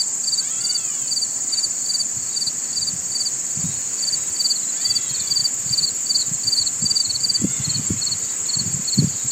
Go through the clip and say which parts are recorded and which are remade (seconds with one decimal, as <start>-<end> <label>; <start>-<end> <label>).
0.0-7.0 recorded; 7.0-7.5 remade; 7.5-9.3 recorded